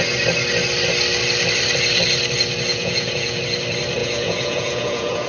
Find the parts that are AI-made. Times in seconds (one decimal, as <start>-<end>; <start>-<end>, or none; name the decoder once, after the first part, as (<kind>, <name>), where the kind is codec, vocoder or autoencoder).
2.7-3.4 (vocoder, Vocos); 4.0-5.3